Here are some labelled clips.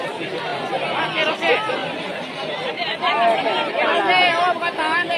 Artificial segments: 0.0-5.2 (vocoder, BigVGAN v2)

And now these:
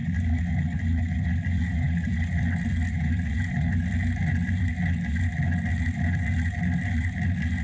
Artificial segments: none

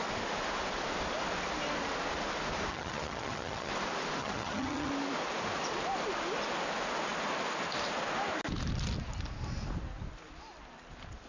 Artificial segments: 2.7-3.7 (vocoder, HiFi-GAN); 4.2-4.9

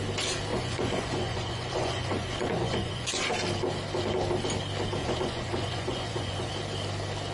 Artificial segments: 0.5-3.2 (vocoder, Vocos); 5.0-6.5

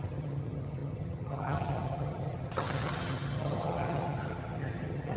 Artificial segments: 0.0-5.2 (vocoder, HiFi-GAN)

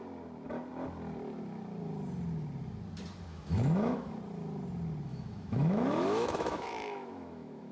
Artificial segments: 3.3-4.1 (autoencoder, DAC-VAE); 5.1-7.7